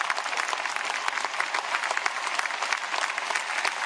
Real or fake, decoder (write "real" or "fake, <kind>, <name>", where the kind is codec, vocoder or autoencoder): real